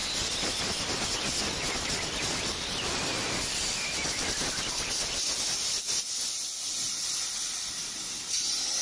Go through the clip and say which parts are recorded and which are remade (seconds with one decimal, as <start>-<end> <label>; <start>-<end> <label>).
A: 0.0-8.8 recorded